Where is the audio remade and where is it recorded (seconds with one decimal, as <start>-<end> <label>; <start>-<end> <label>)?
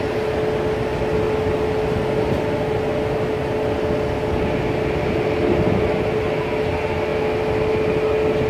0.0-8.5 recorded